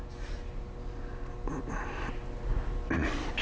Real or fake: real